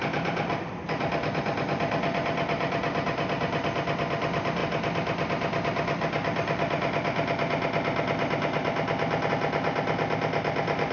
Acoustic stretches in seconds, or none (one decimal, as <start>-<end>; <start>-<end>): 0.0-10.9